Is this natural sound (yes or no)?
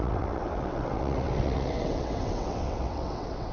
no